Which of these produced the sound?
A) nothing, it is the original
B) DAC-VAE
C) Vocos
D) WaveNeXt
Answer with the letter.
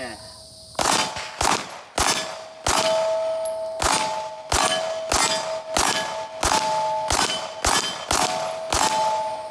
A